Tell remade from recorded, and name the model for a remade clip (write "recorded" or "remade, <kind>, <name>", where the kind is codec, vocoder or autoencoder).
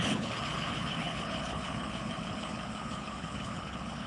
remade, codec, HILCodec